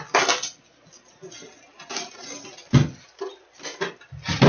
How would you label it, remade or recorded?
recorded